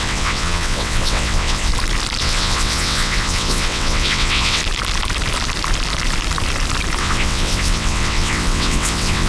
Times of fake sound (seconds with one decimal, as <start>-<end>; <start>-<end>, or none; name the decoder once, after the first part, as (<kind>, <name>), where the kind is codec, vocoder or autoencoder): 0.0-1.7 (vocoder, WaveNeXt); 2.2-4.6; 7.0-9.3